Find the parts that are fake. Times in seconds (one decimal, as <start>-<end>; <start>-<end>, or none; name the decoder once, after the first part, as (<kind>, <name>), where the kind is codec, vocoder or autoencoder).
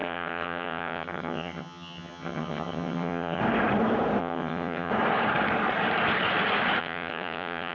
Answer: 0.0-3.4 (vocoder, HiFi-GAN); 4.2-4.9; 6.8-7.7